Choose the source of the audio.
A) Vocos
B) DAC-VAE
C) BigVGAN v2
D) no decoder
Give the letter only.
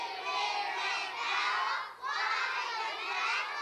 D